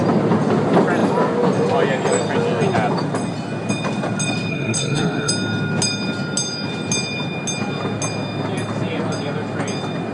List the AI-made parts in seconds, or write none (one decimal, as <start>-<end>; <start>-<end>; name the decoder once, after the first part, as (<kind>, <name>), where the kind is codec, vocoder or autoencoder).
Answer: 4.5-5.3 (codec, SNAC)